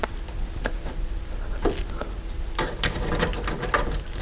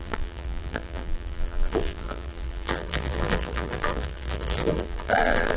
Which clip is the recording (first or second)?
first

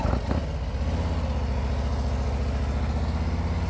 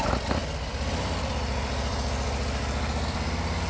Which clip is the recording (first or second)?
first